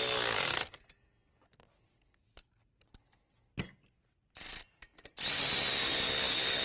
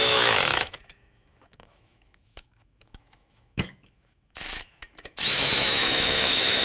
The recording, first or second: first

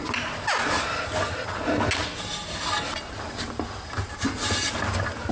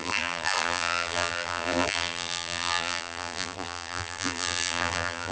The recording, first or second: first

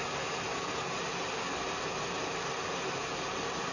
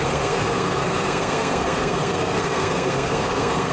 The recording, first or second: first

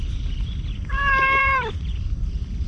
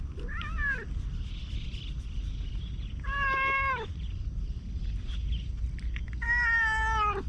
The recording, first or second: second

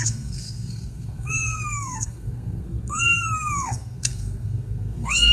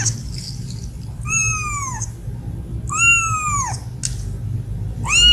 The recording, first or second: second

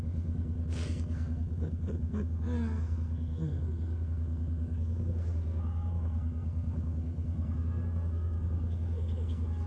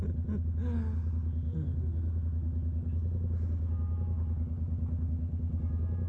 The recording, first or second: second